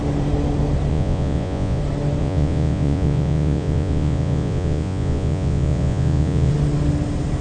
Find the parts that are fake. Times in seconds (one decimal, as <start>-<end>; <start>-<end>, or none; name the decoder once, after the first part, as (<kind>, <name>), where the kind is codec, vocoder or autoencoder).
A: 0.9-1.8 (vocoder, Vocos); 2.2-6.5